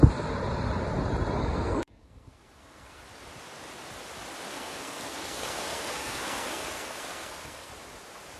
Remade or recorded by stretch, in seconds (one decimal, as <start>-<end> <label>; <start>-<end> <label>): 0.0-1.4 recorded; 1.4-3.0 remade; 3.0-4.5 recorded; 4.5-7.7 remade; 7.7-8.4 recorded